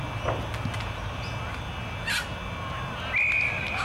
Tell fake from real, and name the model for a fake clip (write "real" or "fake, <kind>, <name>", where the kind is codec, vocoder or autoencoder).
real